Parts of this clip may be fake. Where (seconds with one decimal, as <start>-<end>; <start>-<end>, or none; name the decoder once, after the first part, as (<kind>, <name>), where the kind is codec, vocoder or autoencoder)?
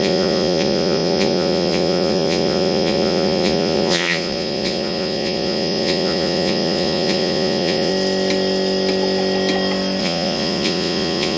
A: 0.0-7.9 (vocoder, Vocos); 10.0-11.4